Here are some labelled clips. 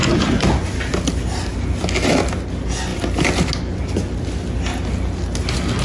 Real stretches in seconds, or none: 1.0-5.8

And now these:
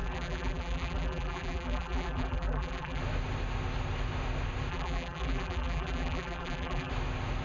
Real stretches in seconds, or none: 3.0-4.7; 6.9-7.4

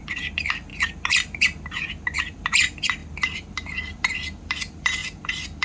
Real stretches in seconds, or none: 0.7-1.9

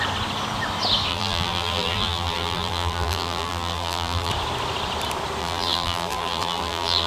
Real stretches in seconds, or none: 0.0-1.1; 4.3-5.4

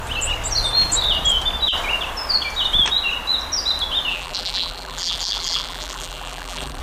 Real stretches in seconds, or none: 0.0-4.1

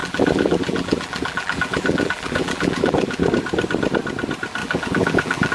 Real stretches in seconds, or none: 3.3-4.6

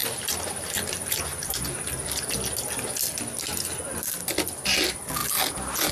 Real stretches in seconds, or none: 1.5-5.9

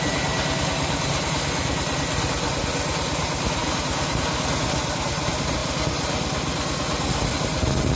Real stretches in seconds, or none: 0.0-3.6; 4.2-8.0